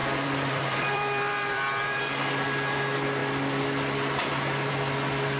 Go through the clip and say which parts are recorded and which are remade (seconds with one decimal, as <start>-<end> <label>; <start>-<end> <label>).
0.0-2.0 remade; 2.0-5.4 recorded

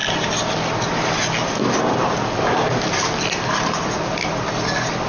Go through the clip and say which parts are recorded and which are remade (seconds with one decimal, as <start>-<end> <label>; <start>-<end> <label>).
0.0-5.1 recorded

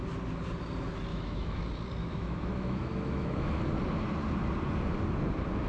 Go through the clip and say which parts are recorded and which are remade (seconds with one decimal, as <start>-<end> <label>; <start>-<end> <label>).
0.0-1.1 recorded; 1.1-1.6 remade; 1.6-2.0 recorded; 2.0-3.6 remade; 3.6-5.7 recorded

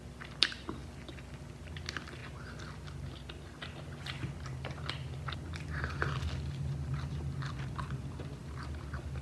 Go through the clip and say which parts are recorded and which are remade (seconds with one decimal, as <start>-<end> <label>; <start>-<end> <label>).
0.0-9.2 recorded

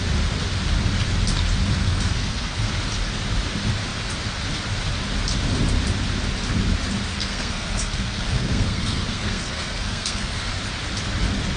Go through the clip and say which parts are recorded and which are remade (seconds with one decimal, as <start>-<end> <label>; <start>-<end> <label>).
0.0-1.8 recorded; 1.8-2.7 remade; 2.7-7.1 recorded; 7.1-10.5 remade; 10.5-11.6 recorded